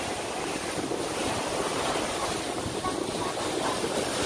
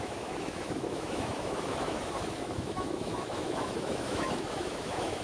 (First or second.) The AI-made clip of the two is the second